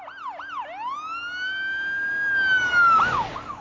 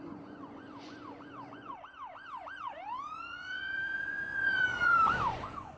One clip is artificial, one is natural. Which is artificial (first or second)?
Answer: second